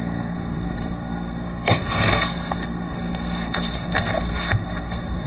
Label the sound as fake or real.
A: fake